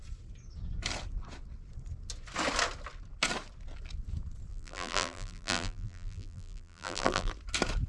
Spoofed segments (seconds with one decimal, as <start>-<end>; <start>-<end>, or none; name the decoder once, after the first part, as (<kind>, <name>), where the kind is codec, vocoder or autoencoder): 4.5-7.3 (vocoder, BigVGAN v2)